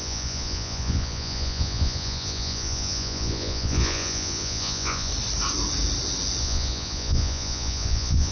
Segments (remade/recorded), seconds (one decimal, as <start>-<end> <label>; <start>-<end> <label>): 0.0-5.1 remade; 5.1-6.4 recorded; 6.4-8.3 remade

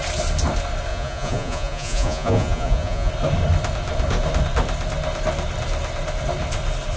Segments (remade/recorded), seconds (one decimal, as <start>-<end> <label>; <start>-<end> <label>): 0.0-0.9 recorded; 0.9-3.1 remade; 3.1-7.0 recorded

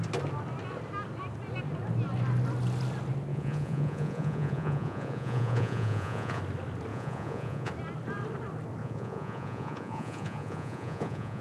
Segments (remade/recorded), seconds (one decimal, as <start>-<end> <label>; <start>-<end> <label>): 0.0-3.3 recorded; 3.3-6.4 remade; 6.4-6.9 recorded; 6.9-7.7 remade; 7.7-8.8 recorded; 8.8-11.4 remade

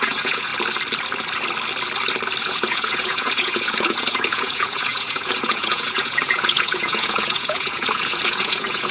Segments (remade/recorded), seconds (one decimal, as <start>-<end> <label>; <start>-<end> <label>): 0.0-0.5 remade; 0.5-2.4 recorded; 2.4-8.9 remade

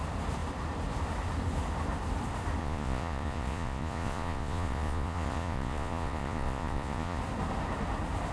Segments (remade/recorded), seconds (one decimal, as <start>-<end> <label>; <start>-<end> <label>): 0.0-2.6 recorded; 2.6-7.2 remade; 7.2-8.3 recorded